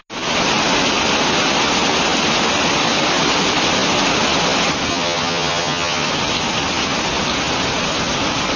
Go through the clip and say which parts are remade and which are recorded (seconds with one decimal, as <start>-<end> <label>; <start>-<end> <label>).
0.0-4.9 recorded; 4.9-6.1 remade; 6.1-8.6 recorded